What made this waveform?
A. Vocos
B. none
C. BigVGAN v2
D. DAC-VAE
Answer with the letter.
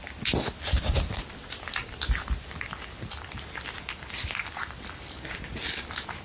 B